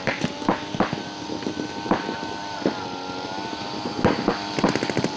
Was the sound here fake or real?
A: real